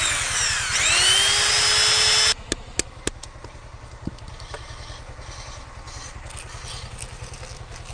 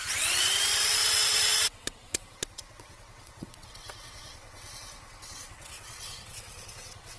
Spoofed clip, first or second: second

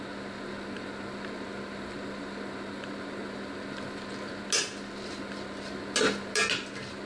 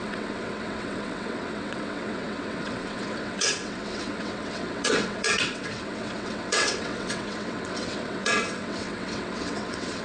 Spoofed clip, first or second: second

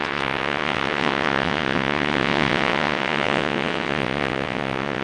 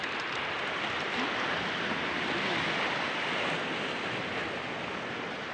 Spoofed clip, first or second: first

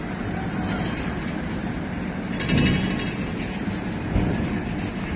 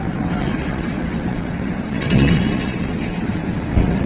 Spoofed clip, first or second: second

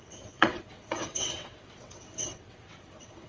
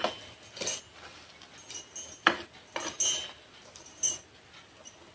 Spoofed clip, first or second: first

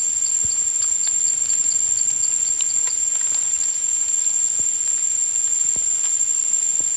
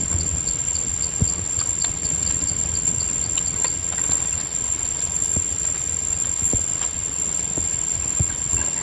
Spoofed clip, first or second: second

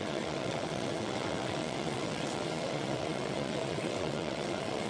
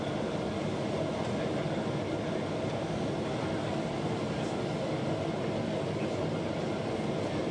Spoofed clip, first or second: first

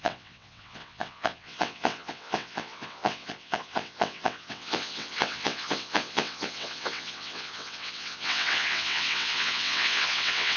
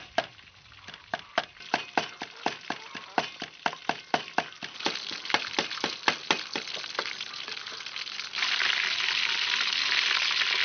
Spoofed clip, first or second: first